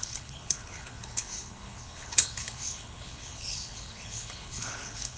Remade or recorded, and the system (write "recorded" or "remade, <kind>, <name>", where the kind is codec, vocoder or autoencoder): remade, codec, HILCodec